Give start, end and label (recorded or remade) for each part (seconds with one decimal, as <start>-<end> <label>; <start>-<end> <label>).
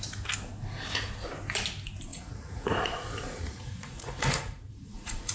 0.0-2.1 recorded; 2.1-5.3 remade